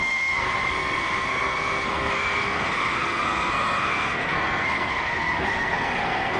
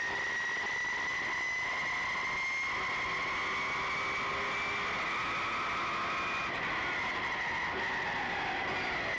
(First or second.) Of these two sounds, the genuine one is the second